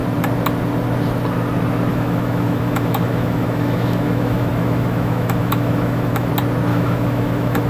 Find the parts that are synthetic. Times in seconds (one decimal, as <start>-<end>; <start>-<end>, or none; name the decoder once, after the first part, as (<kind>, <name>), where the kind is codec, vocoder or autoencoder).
1.9-6.3 (autoencoder, DAC-VAE); 6.7-7.7